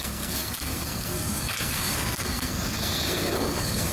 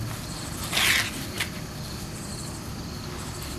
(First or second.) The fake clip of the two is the first